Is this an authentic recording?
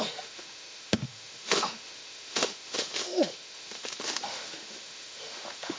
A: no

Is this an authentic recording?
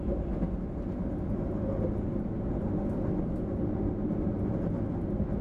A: yes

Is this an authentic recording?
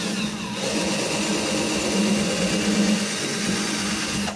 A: no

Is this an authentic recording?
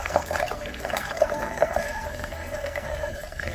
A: no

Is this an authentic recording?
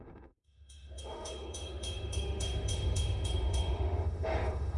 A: no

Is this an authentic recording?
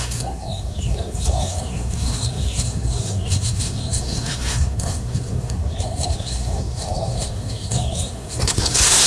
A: no